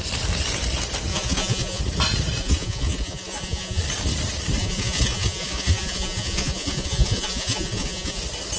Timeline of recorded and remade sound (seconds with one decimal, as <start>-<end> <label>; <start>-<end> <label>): 0.0-1.1 recorded; 1.1-1.8 remade; 1.8-2.4 recorded; 2.4-3.8 remade; 3.8-4.6 recorded; 4.6-8.2 remade; 8.2-8.6 recorded